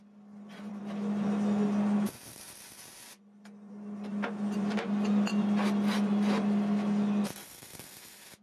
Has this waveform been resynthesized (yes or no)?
no